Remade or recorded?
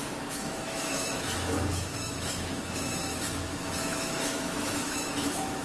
remade